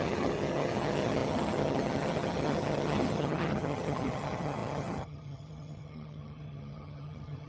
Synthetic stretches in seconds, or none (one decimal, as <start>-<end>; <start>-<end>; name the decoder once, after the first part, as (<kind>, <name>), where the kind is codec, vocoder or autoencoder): 0.0-7.5 (vocoder, HiFi-GAN)